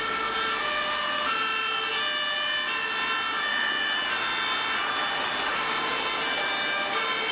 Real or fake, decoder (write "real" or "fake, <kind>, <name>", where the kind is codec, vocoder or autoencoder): real